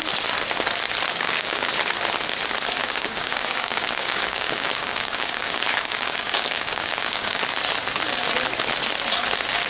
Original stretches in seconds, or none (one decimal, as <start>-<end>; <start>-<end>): 0.0-1.1; 1.7-2.8; 7.4-9.7